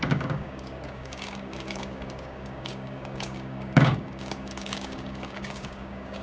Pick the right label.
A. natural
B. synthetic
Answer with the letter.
B